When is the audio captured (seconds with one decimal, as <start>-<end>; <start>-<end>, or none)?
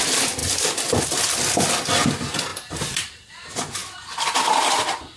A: 0.0-2.5; 3.3-5.2